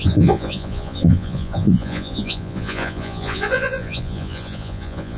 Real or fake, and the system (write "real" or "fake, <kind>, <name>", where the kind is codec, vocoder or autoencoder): fake, vocoder, Vocos